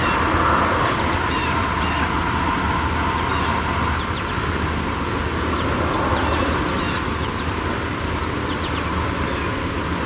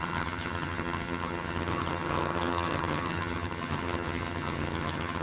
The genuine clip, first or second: first